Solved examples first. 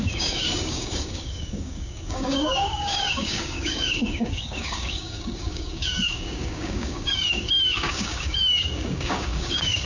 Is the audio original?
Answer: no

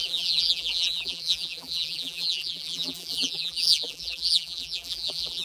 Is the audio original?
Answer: no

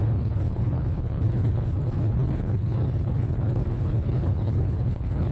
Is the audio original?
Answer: no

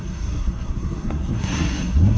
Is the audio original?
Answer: no